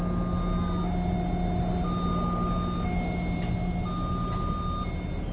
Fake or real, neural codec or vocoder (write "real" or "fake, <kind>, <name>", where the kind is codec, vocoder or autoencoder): real